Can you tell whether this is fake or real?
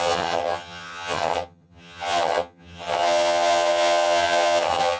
fake